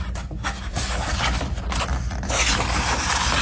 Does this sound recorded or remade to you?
recorded